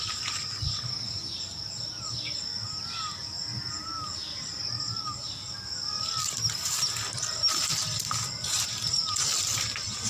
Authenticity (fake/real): real